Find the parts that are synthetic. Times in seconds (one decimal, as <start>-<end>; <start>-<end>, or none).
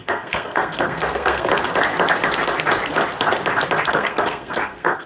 0.0-1.5; 3.9-5.1